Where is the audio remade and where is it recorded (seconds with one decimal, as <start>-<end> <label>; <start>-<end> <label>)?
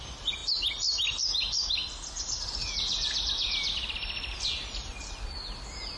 0.0-2.6 recorded; 2.6-3.3 remade; 3.3-6.0 recorded